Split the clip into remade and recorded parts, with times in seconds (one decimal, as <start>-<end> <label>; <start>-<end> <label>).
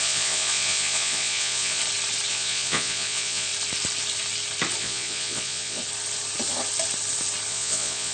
0.0-1.8 remade; 1.8-2.3 recorded; 2.3-3.5 remade; 3.5-4.8 recorded; 4.8-5.8 remade; 5.8-7.5 recorded; 7.5-8.1 remade